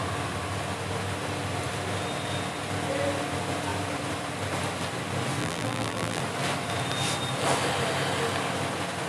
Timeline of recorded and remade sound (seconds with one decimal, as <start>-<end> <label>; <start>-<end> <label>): 0.0-5.4 recorded; 5.4-6.2 remade; 6.2-9.1 recorded